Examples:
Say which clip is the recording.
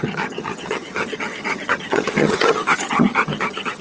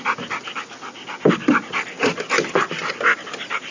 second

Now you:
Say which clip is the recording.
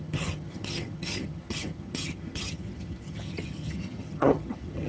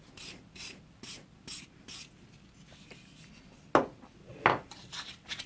second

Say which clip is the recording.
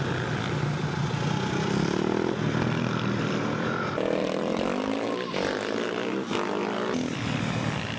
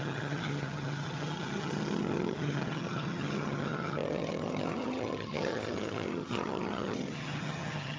first